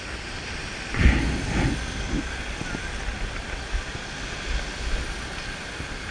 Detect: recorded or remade recorded